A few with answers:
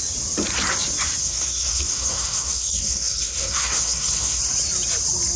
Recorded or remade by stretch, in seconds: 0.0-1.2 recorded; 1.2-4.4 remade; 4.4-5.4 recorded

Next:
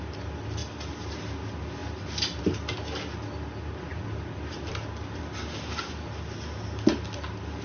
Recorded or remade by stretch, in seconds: 0.0-3.9 recorded; 3.9-5.2 remade; 5.2-7.6 recorded

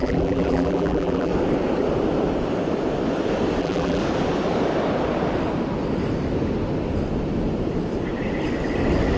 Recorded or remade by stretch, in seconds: 0.0-1.3 remade; 1.3-3.6 recorded; 3.6-4.0 remade; 4.0-9.2 recorded